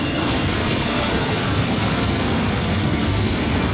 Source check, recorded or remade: remade